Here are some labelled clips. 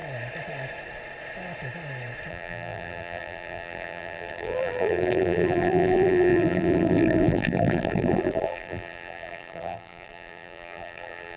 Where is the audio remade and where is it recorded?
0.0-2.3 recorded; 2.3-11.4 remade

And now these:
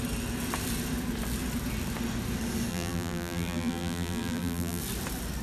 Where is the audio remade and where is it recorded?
0.0-2.7 recorded; 2.7-4.8 remade; 4.8-5.4 recorded

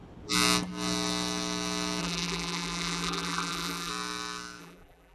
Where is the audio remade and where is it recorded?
0.0-2.0 recorded; 2.0-3.9 remade; 3.9-4.6 recorded; 4.6-5.1 remade

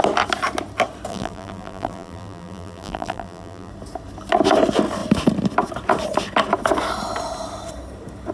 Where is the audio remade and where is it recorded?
0.0-1.1 recorded; 1.1-3.7 remade; 3.7-8.3 recorded